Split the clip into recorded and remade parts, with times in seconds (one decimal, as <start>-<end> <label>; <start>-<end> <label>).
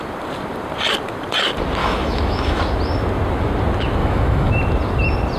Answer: 0.0-1.8 recorded; 1.8-2.6 remade; 2.6-4.0 recorded; 4.0-4.5 remade; 4.5-5.4 recorded